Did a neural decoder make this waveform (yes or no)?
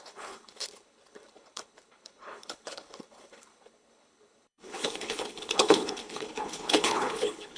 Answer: yes